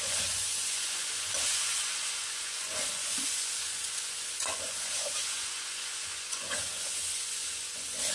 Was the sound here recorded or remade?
remade